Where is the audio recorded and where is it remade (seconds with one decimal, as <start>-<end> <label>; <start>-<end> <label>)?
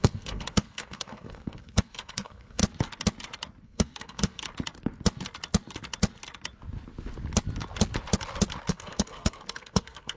0.0-2.6 remade; 2.6-3.6 recorded; 3.6-4.4 remade; 4.4-8.7 recorded; 8.7-10.2 remade